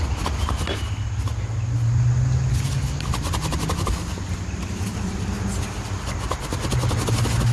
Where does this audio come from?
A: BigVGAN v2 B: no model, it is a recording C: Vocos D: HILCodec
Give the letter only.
B